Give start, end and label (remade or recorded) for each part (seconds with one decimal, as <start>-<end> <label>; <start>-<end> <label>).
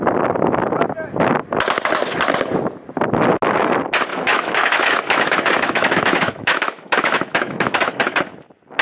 0.0-4.1 recorded; 4.1-8.2 remade; 8.2-8.8 recorded